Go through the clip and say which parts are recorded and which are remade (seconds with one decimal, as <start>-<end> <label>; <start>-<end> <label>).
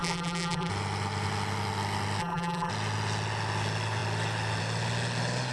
0.0-0.7 remade; 0.7-2.2 recorded; 2.2-2.7 remade; 2.7-5.5 recorded